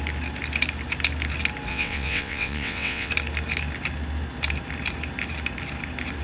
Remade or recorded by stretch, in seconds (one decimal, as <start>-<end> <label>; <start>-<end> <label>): 0.0-1.7 recorded; 1.7-3.1 remade; 3.1-6.2 recorded